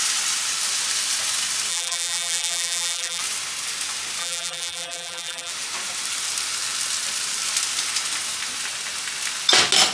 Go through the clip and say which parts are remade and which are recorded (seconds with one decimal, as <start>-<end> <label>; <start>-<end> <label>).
0.0-1.7 recorded; 1.7-3.2 remade; 3.2-4.2 recorded; 4.2-5.5 remade; 5.5-9.9 recorded